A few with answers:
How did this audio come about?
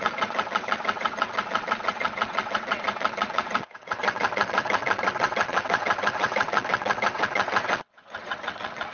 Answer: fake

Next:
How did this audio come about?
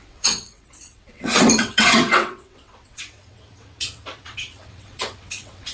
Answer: fake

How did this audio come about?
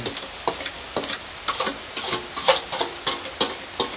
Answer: real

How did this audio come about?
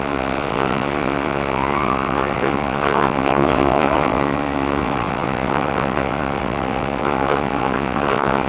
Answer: fake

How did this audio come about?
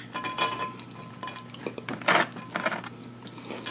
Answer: real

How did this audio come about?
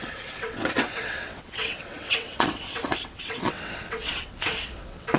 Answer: fake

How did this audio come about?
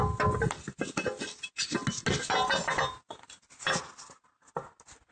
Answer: real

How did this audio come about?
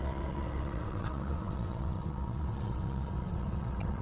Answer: fake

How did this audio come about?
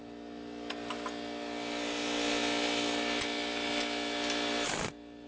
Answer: real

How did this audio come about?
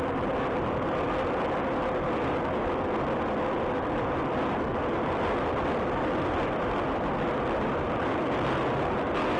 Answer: real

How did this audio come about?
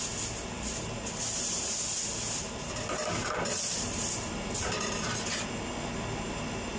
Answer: real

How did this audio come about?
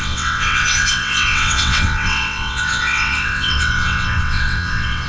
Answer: fake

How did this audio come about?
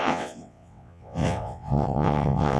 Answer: fake